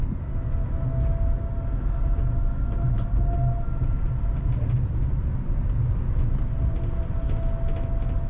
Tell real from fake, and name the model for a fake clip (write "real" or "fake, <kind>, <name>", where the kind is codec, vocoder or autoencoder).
real